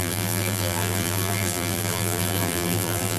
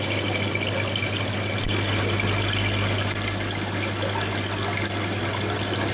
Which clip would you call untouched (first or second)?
second